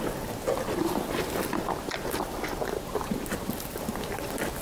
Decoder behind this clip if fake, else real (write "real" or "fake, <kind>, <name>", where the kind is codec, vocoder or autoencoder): real